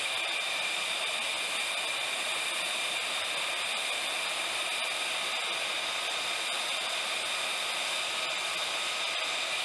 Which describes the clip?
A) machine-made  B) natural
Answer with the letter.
B